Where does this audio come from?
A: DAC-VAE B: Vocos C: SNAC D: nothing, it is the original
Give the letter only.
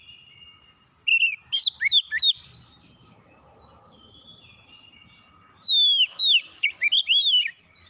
D